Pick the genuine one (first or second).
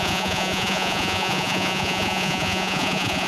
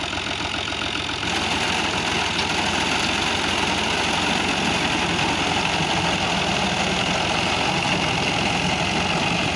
second